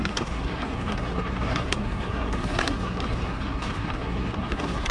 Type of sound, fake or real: fake